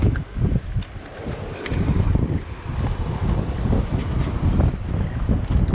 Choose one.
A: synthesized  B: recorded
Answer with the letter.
B